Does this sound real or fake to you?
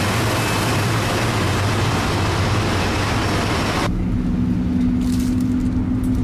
real